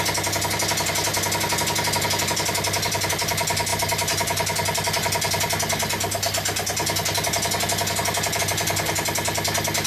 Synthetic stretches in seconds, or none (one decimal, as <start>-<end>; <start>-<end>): none